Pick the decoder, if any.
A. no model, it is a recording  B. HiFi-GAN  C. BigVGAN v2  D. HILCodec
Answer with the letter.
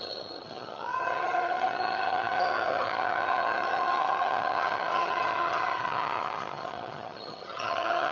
B